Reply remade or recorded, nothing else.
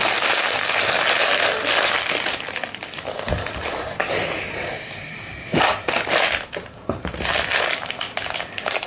recorded